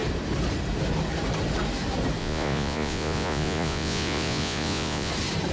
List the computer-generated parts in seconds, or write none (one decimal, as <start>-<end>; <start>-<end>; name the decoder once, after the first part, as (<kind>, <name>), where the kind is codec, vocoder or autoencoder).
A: 2.2-5.1 (vocoder, Vocos)